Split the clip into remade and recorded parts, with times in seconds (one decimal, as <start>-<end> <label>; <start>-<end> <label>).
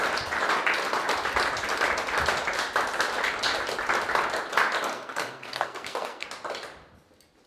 0.0-4.9 recorded; 4.9-6.3 remade; 6.3-7.5 recorded